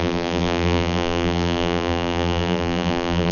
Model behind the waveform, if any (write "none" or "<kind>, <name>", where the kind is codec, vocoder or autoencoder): vocoder, BigVGAN v2